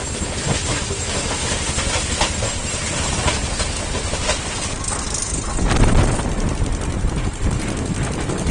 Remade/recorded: recorded